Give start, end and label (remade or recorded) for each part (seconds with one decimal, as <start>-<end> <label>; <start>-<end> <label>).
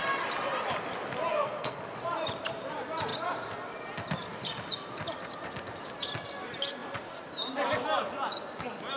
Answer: 0.0-1.3 recorded; 1.3-1.8 remade; 1.8-9.0 recorded